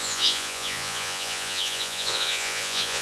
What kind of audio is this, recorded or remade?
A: remade